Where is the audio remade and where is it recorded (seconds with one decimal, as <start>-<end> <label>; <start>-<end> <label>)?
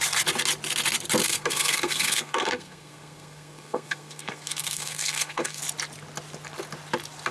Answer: 0.0-1.2 recorded; 1.2-5.6 remade; 5.6-7.3 recorded